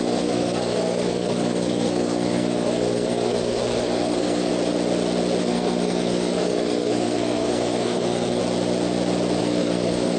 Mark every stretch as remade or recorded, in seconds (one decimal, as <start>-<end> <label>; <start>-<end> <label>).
0.0-4.5 remade; 4.5-5.4 recorded; 5.4-8.4 remade; 8.4-9.4 recorded; 9.4-10.2 remade